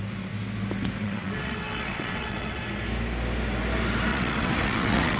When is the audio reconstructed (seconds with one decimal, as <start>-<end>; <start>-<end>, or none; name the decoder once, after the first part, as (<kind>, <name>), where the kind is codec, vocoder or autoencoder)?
1.0-2.6 (vocoder, WaveNeXt); 4.1-5.2